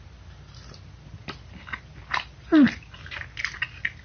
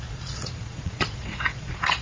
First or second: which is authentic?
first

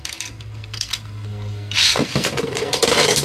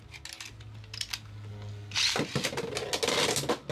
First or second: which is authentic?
second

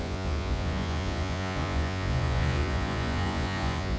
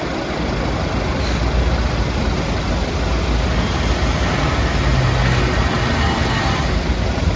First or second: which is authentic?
second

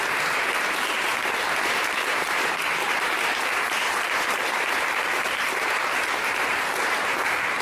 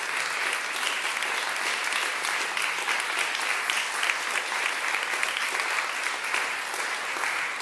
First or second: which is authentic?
second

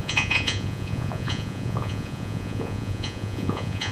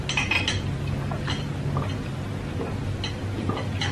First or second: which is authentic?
second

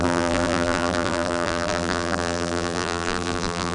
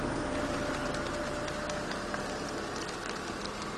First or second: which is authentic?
second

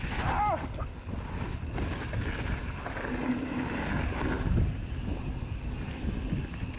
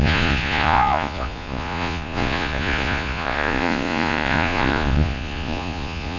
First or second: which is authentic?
first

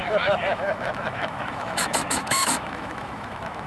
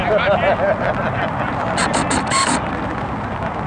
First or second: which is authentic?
second